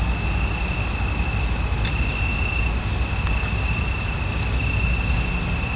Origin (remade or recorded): recorded